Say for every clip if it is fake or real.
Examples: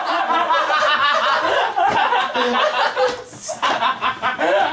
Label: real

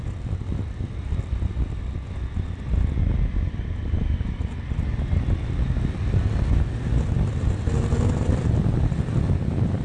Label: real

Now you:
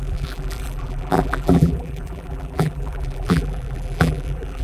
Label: fake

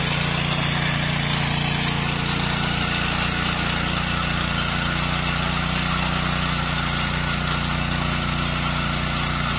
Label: real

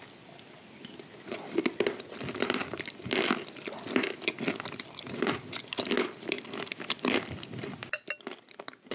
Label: real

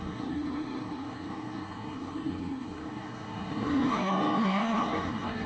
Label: fake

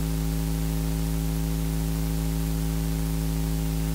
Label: real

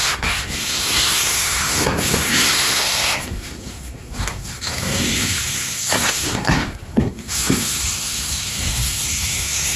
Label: fake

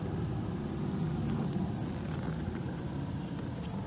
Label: real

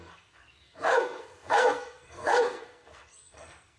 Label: fake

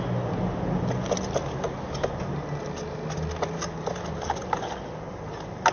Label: real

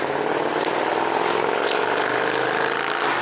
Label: real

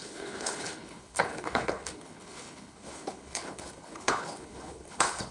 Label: fake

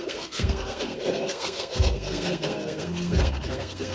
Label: fake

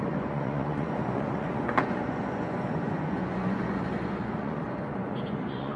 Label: fake